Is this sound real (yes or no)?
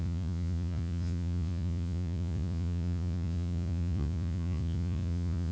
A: no